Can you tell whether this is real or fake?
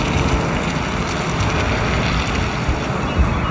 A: real